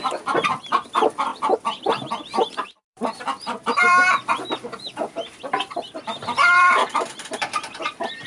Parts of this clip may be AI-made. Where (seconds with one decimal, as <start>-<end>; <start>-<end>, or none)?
0.0-8.3